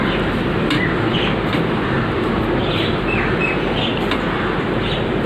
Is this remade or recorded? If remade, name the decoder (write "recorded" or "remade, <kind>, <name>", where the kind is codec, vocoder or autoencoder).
recorded